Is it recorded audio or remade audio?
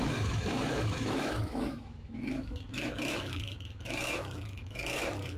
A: remade